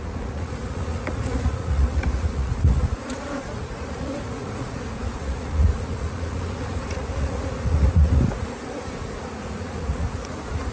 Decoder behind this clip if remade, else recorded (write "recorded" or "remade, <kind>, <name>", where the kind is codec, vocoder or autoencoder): remade, vocoder, Vocos